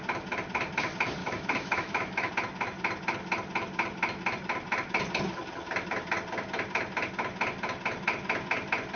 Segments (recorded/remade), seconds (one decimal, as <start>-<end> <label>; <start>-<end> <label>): 0.0-1.2 recorded; 1.2-2.3 remade; 2.3-9.0 recorded